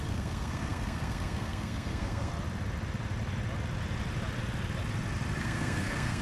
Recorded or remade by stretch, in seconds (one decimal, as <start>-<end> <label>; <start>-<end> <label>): 0.0-2.3 remade; 2.3-5.4 recorded; 5.4-6.2 remade